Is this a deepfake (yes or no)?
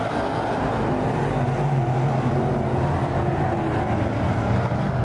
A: no